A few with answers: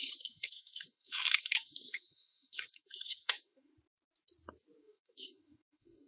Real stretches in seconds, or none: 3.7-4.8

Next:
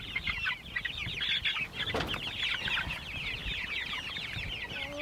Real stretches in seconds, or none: 0.0-5.0

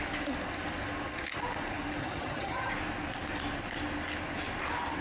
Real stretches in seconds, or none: 0.0-2.0; 2.7-5.0

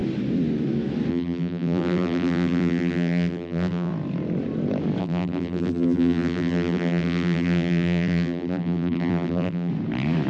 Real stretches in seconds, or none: 0.0-1.1; 3.9-5.0; 9.7-10.3

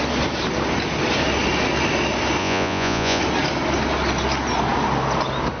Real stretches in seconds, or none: 0.0-2.4; 3.2-5.6

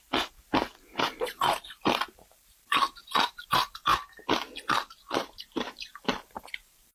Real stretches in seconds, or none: 3.9-4.7

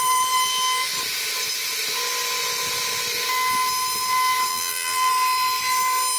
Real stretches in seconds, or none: 0.0-4.5; 5.1-6.2